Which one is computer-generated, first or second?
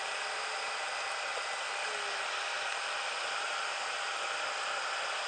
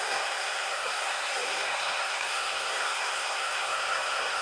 second